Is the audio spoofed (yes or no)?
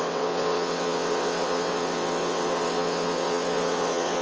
yes